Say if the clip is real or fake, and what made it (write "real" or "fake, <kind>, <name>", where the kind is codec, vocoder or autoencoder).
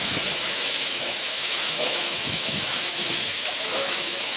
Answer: fake, autoencoder, DAC-VAE